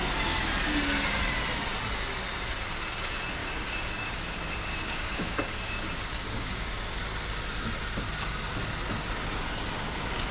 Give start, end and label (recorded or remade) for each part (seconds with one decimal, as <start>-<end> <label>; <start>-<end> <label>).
0.0-3.4 recorded; 3.4-7.0 remade; 7.0-10.3 recorded